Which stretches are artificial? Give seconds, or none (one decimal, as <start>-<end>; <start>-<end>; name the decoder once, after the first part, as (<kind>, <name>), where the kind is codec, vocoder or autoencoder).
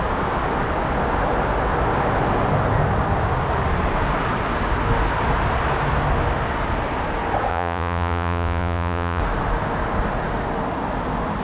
7.5-9.2 (vocoder, Vocos)